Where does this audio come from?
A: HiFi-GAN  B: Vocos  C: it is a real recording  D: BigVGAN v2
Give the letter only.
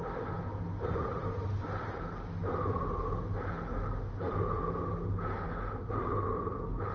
C